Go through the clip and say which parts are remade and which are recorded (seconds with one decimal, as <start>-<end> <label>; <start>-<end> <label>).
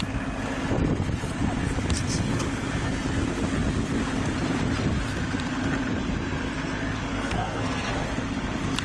0.0-7.1 recorded; 7.1-7.9 remade; 7.9-8.8 recorded